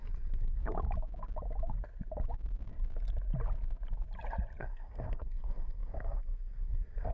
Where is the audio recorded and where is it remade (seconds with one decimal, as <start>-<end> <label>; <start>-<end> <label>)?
0.0-0.6 remade; 0.6-4.6 recorded; 4.6-7.1 remade